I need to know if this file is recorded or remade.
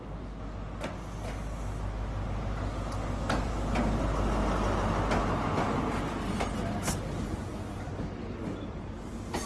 recorded